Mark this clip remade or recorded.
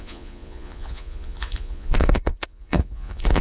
remade